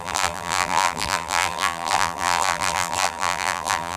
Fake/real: fake